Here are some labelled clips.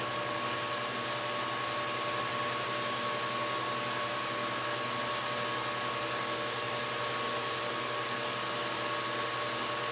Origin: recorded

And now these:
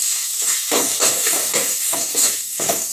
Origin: remade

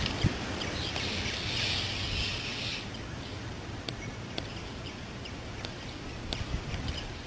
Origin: recorded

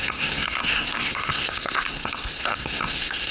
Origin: remade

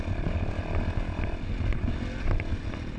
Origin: recorded